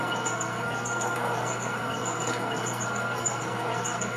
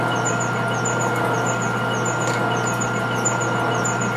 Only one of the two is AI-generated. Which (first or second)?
first